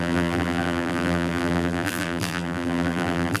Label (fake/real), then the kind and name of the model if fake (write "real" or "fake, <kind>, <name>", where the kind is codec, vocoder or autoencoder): fake, vocoder, BigVGAN v2